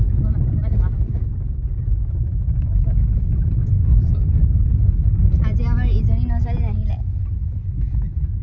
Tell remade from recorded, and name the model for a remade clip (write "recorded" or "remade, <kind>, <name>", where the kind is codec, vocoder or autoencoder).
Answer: recorded